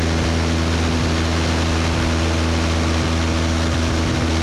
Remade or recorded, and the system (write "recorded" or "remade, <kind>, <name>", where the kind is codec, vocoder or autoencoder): recorded